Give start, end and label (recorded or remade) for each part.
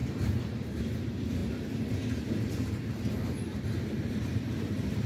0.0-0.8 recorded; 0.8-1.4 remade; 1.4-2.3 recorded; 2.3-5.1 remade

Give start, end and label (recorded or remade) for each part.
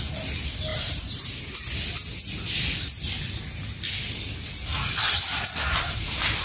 0.0-0.7 recorded; 0.7-1.4 remade; 1.4-6.4 recorded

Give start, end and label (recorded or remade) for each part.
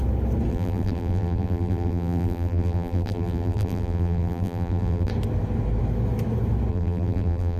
0.0-0.5 recorded; 0.5-5.1 remade; 5.1-6.7 recorded; 6.7-7.6 remade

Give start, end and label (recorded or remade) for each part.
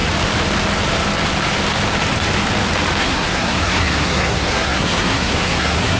0.0-3.0 recorded; 3.0-6.0 remade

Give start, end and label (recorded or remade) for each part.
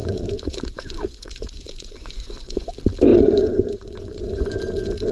0.0-2.7 remade; 2.7-3.1 recorded; 3.1-4.4 remade; 4.4-5.1 recorded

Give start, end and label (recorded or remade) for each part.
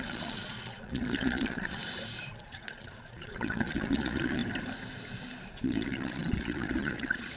0.0-1.8 remade; 1.8-2.4 recorded; 2.4-4.4 remade; 4.4-5.5 recorded; 5.5-7.4 remade